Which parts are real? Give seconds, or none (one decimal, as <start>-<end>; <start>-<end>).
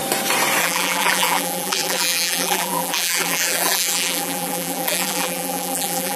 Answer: 0.0-0.6